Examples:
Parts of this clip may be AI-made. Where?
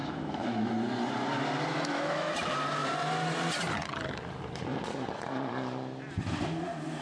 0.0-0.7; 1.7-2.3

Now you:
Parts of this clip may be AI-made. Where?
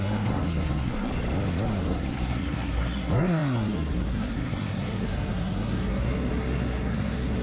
0.0-1.1; 1.8-7.4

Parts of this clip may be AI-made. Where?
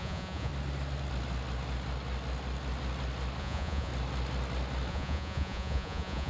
0.0-0.5; 3.4-3.9; 4.9-6.3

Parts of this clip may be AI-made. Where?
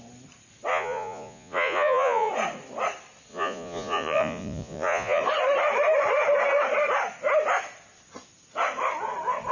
0.7-2.3; 3.3-5.2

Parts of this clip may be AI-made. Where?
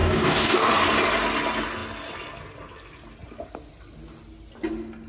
0.0-0.7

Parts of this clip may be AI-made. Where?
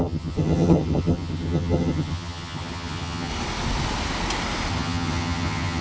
0.0-3.3; 4.7-5.8